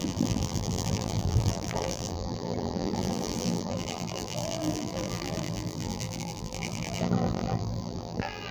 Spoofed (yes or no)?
yes